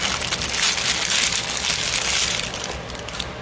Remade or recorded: recorded